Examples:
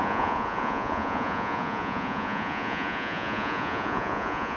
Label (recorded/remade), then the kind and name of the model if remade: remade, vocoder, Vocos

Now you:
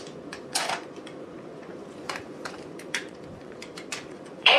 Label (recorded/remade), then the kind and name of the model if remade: remade, vocoder, Vocos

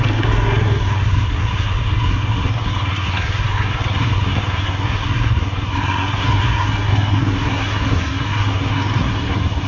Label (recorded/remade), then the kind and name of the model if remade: remade, codec, SNAC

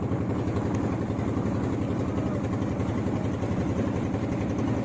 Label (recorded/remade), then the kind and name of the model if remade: recorded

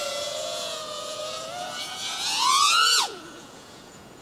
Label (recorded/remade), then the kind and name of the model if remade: remade, vocoder, Vocos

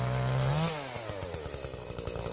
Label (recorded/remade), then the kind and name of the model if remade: recorded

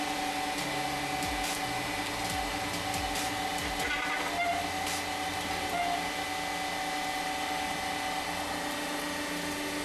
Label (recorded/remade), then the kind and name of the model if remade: recorded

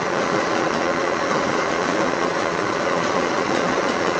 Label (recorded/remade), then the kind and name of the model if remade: remade, vocoder, Vocos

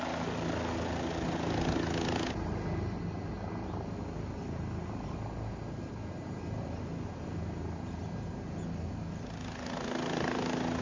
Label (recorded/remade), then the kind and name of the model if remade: recorded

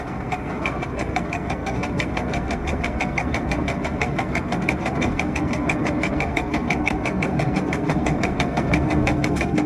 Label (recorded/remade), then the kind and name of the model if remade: remade, codec, SNAC